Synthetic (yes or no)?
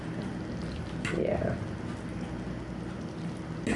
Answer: no